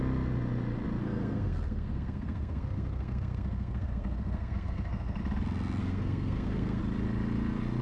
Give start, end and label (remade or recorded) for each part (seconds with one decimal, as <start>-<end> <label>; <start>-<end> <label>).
0.0-1.0 recorded; 1.0-5.2 remade; 5.2-5.8 recorded; 5.8-6.8 remade; 6.8-7.8 recorded